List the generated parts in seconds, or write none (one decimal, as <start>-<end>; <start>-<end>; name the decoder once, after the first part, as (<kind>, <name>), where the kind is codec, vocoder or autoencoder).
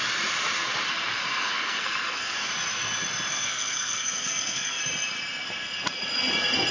0.9-2.5 (codec, SNAC); 3.3-4.8